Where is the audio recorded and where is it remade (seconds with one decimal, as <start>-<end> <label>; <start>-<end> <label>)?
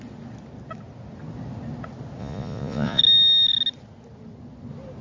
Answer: 0.0-2.2 recorded; 2.2-3.0 remade; 3.0-5.0 recorded